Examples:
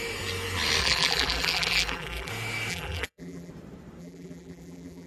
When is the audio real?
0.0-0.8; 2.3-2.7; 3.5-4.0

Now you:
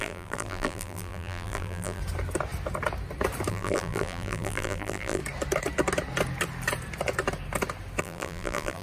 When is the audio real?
2.0-3.5; 5.2-8.0

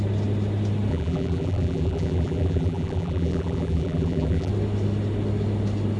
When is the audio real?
0.0-0.9; 4.5-6.0

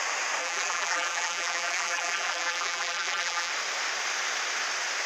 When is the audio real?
0.0-0.4; 3.5-5.1

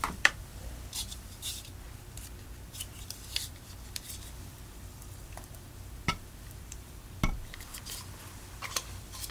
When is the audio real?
1.5-2.9; 7.7-8.4

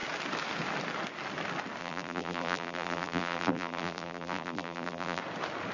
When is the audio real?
0.0-1.8; 5.2-5.7